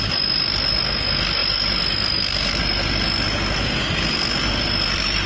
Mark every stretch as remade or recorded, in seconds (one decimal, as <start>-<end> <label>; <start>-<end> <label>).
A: 0.0-5.3 recorded